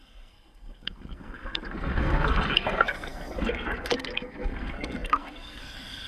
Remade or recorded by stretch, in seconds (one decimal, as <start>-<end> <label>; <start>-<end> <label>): 0.0-6.1 remade